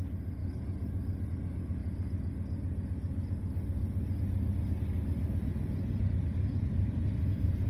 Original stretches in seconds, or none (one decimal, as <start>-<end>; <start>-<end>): 0.0-0.4; 1.3-7.7